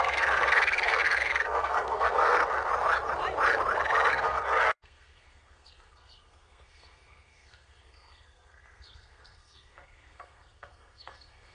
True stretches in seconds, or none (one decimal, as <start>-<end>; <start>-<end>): 2.7-4.1